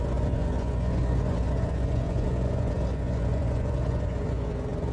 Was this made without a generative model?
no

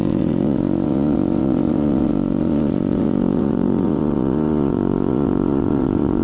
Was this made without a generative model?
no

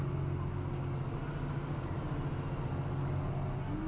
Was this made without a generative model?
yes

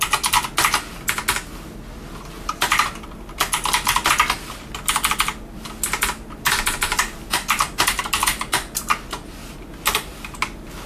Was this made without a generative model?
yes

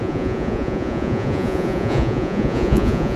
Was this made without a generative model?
no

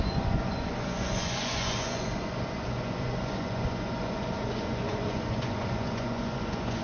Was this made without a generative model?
no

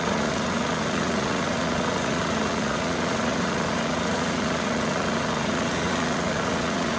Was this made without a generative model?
no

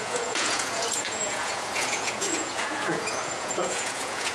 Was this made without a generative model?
no